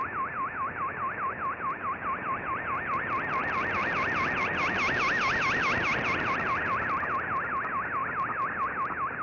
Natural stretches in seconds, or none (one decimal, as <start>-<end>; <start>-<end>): 0.0-9.2

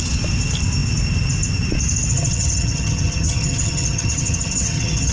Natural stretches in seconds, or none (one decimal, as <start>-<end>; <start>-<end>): 0.0-2.1

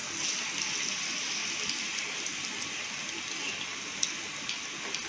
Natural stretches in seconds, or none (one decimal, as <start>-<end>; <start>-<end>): 0.0-5.1

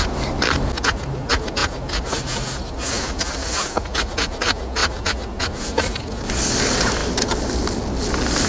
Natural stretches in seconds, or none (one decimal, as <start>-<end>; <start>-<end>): 0.0-8.5

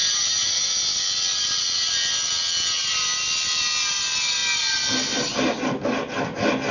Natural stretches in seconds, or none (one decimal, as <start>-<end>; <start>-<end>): 0.0-6.7

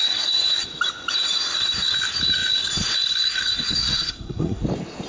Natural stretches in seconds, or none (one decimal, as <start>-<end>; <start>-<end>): 0.0-3.8; 4.6-5.1